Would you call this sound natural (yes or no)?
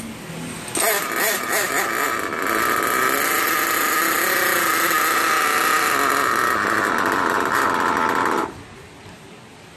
yes